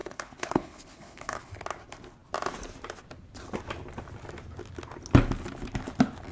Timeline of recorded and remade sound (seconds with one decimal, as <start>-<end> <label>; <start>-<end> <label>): 0.0-1.5 remade; 1.5-6.3 recorded